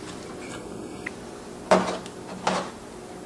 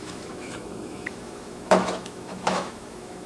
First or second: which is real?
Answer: first